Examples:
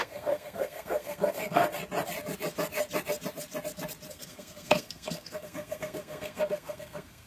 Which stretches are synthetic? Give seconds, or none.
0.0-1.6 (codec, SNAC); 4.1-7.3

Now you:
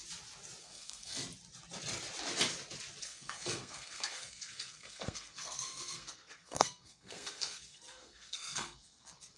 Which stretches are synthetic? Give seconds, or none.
0.6-1.2 (codec, SNAC); 3.0-9.4

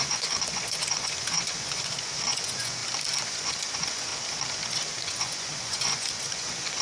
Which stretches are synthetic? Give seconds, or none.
0.0-2.8 (vocoder, Vocos); 3.3-4.1; 5.0-6.8

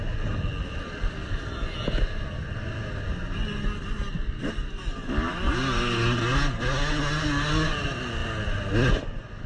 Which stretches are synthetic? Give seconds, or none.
none